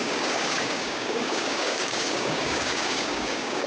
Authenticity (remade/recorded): remade